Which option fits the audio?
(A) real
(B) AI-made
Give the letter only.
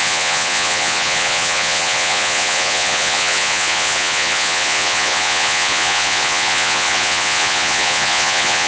B